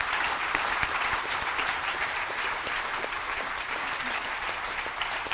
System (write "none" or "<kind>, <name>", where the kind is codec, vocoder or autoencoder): vocoder, BigVGAN v2